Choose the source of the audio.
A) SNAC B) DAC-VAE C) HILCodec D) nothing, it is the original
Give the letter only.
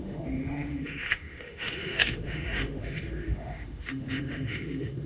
B